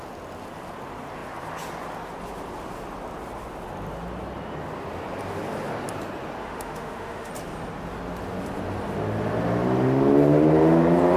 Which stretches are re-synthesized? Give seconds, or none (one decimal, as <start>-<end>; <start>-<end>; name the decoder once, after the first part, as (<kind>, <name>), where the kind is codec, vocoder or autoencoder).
6.4-7.3 (autoencoder, DAC-VAE)